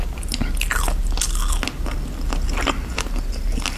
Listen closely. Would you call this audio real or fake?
real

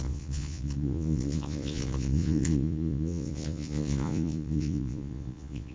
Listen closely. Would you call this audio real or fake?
fake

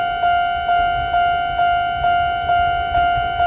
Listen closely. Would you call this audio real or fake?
real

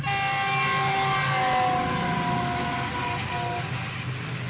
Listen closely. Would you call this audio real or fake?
real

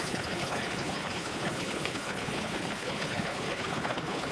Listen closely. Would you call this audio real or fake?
fake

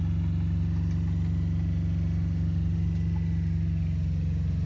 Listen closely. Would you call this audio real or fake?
real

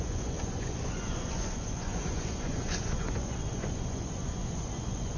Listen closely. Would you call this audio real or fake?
fake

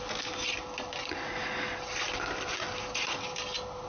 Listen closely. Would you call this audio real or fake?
real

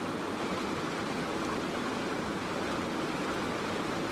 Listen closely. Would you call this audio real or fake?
real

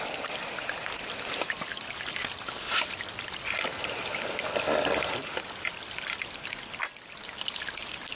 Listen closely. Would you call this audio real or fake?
real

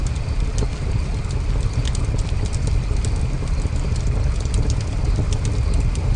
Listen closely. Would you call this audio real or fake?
real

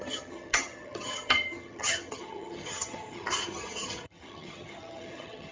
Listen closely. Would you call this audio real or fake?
fake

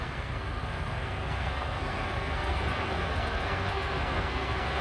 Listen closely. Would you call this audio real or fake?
fake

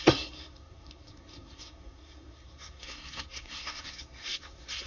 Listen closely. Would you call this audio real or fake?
fake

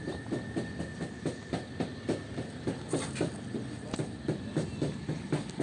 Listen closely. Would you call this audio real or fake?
real